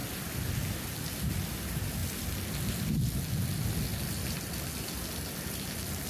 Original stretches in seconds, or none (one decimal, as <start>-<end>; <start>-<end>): 0.0-6.1